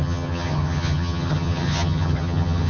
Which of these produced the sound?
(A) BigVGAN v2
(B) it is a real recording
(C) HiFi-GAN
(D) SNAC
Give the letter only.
C